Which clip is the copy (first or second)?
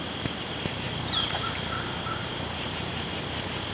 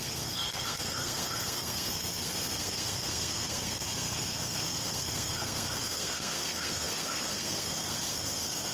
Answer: second